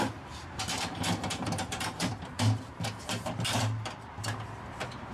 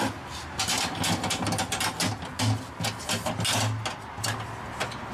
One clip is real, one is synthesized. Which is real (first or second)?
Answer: second